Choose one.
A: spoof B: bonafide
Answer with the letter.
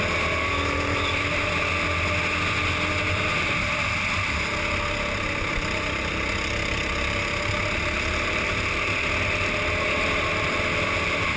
B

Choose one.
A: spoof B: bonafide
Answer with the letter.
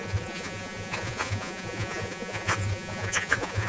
A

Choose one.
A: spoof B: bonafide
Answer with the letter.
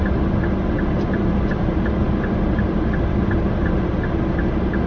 B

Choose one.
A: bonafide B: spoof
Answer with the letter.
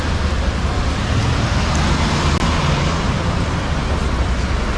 A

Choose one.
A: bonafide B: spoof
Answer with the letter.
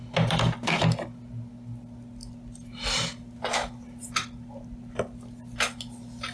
A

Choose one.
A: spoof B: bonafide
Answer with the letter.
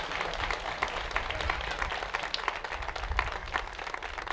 B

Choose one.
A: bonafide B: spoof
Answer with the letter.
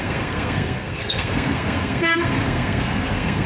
B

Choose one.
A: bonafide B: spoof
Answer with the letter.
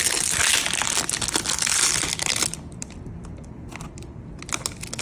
A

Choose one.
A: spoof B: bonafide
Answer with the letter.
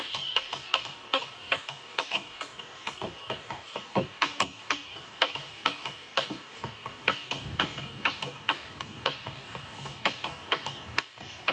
A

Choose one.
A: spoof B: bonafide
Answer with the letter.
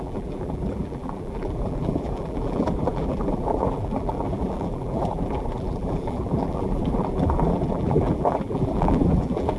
A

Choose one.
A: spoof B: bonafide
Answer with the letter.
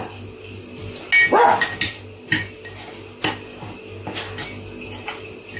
B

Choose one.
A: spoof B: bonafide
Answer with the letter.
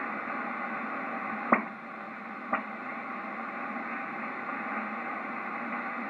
B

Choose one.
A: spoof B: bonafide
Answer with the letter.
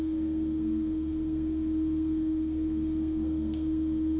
A